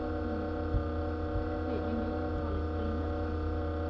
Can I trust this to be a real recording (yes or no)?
yes